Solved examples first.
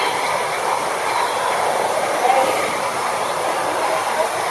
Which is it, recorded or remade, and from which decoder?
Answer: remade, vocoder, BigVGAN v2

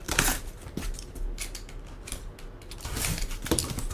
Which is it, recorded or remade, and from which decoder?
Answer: recorded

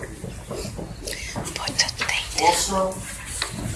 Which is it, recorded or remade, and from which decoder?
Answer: recorded